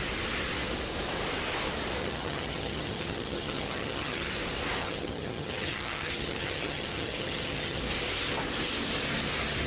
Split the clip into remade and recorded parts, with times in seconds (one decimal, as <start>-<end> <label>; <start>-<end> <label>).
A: 0.0-2.0 recorded; 2.0-4.3 remade; 4.3-4.8 recorded; 4.8-7.8 remade; 7.8-9.7 recorded